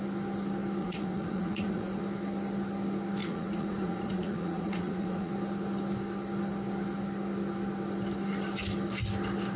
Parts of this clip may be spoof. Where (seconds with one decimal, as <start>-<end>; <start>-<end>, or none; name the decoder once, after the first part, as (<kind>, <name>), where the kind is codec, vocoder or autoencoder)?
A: 0.8-2.0 (vocoder, Vocos); 3.2-5.3